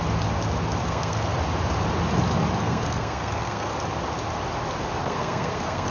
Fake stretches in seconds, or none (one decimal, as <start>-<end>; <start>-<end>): 0.8-1.3; 2.6-3.7; 5.0-5.9